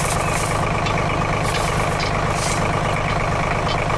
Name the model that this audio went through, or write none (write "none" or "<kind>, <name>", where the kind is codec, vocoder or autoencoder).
none